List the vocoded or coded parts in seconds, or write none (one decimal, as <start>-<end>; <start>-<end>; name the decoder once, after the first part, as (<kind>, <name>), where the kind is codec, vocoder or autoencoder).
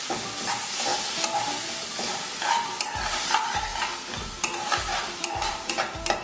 none